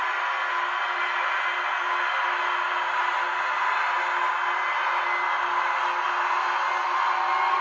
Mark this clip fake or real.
real